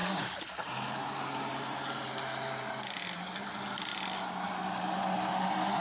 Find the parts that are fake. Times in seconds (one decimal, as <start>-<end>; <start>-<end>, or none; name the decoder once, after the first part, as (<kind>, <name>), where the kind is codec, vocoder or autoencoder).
none

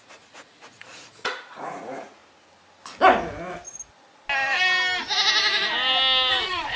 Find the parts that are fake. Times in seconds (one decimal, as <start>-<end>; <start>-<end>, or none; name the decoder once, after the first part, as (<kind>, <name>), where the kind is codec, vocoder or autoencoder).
0.0-2.2 (vocoder, Vocos); 6.3-6.8

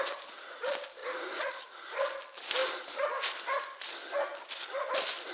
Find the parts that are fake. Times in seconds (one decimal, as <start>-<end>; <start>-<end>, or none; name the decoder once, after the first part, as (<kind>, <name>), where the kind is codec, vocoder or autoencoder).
1.0-1.5 (vocoder, Vocos)

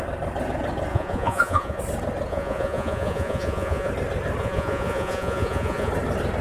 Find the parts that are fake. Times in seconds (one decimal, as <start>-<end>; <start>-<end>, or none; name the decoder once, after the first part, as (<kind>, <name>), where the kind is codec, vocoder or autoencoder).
0.9-1.8 (vocoder, Vocos); 2.3-3.9; 4.4-5.9

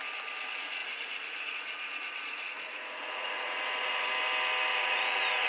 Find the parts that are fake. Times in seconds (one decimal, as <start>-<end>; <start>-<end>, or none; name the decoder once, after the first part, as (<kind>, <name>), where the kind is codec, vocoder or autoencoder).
0.8-4.1 (vocoder, Vocos); 4.7-5.5